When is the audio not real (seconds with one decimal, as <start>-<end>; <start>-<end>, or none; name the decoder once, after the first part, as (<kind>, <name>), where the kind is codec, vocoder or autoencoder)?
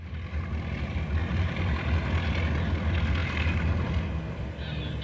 1.2-1.9 (vocoder, BigVGAN v2); 3.2-3.9